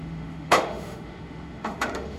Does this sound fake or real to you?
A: fake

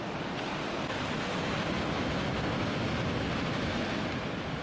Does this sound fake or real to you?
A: real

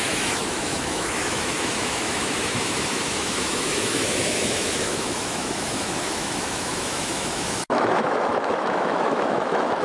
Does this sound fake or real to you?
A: fake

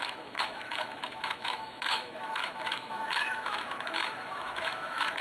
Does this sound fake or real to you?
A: fake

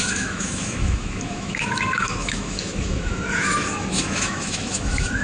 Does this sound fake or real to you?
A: fake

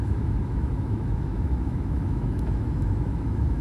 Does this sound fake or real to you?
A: fake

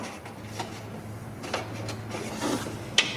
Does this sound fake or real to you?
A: real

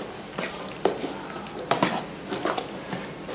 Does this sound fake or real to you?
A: real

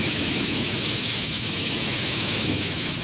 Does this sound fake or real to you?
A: fake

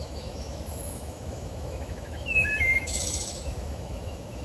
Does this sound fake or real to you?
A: fake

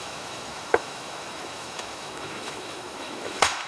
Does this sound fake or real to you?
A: fake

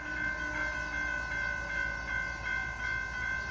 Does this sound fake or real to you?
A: real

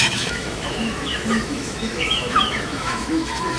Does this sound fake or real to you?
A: fake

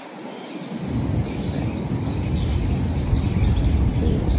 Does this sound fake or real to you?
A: real